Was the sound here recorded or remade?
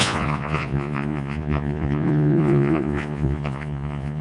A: remade